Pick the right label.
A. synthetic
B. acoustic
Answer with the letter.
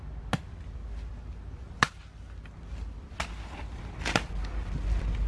B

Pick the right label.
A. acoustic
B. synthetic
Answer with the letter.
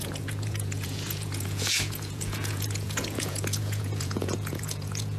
B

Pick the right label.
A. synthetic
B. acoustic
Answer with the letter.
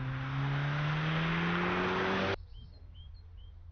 B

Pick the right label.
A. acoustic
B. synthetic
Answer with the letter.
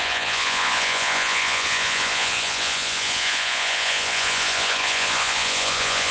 B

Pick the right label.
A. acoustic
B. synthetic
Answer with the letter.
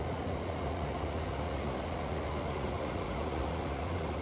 B